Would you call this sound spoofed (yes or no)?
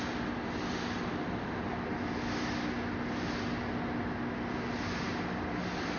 no